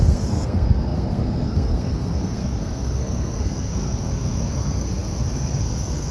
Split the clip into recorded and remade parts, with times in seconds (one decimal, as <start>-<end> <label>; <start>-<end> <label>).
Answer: 0.0-6.1 remade